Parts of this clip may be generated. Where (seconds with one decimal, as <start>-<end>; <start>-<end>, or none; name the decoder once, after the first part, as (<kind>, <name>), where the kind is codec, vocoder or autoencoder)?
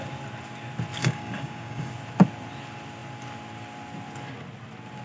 1.0-1.9 (codec, DAC)